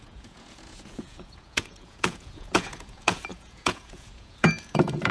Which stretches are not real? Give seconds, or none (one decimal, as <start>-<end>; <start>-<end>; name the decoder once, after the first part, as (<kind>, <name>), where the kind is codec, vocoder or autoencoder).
0.0-5.1 (vocoder, Vocos)

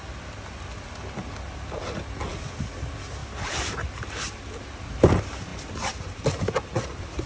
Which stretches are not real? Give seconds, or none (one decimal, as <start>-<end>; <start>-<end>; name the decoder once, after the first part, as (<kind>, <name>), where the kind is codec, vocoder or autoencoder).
none

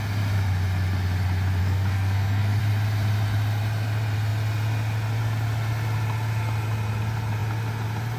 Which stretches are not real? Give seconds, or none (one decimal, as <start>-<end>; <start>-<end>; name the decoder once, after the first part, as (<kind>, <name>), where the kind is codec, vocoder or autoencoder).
1.6-2.6 (codec, SNAC)

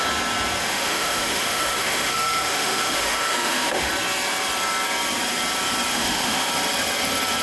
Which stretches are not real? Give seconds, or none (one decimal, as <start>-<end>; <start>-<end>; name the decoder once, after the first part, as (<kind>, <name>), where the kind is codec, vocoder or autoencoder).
0.6-3.9 (autoencoder, DAC-VAE); 5.9-6.5

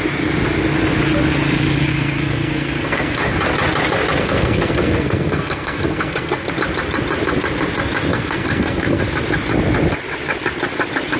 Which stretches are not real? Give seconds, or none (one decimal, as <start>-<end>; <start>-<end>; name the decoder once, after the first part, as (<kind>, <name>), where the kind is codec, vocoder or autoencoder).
1.9-3.4 (codec, SNAC); 4.2-6.5; 8.1-9.0

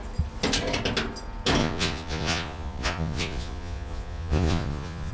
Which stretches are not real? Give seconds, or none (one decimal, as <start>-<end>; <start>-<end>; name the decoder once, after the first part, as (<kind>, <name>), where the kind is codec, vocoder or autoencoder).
1.6-5.1 (vocoder, Vocos)

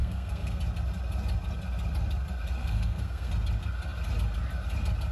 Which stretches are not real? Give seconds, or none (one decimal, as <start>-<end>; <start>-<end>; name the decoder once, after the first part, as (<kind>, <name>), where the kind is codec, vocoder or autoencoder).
0.0-0.6 (codec, SNAC); 2.6-3.3

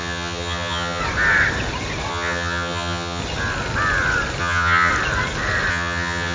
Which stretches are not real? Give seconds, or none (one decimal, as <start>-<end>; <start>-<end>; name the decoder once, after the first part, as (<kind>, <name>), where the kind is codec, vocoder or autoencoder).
0.0-1.0 (vocoder, HiFi-GAN); 2.1-3.2; 4.4-4.9; 5.7-6.3